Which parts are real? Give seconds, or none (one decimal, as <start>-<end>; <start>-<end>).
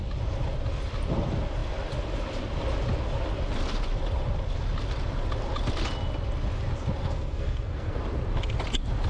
0.0-7.0; 8.0-9.1